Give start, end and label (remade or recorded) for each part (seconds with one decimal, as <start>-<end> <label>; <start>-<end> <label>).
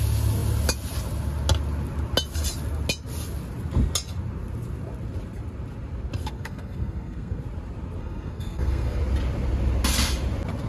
0.0-6.2 recorded; 6.2-7.4 remade; 7.4-8.0 recorded; 8.0-9.0 remade; 9.0-10.7 recorded